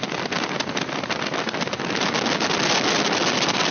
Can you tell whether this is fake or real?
real